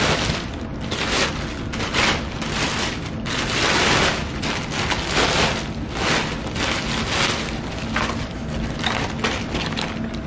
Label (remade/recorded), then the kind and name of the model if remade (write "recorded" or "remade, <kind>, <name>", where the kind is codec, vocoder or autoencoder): recorded